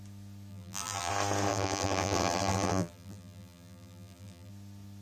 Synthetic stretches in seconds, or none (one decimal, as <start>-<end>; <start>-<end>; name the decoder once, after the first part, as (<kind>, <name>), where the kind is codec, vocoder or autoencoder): 0.5-1.1 (vocoder, BigVGAN v2); 1.5-4.5